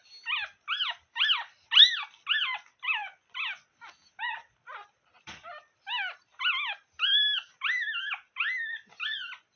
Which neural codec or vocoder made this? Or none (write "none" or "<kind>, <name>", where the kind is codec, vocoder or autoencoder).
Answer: none